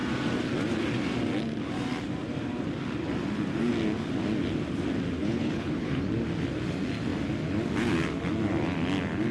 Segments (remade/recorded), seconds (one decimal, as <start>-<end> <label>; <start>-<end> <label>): 0.0-5.2 recorded; 5.2-6.0 remade; 6.0-9.3 recorded